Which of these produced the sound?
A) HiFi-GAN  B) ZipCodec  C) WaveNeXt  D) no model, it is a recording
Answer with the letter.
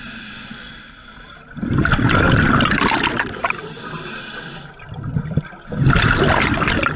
D